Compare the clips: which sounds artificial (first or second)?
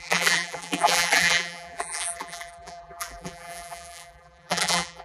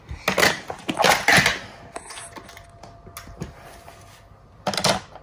first